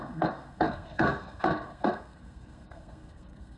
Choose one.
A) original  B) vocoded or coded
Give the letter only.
B